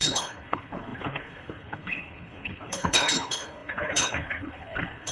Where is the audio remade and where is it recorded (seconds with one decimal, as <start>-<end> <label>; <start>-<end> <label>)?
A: 0.0-5.1 remade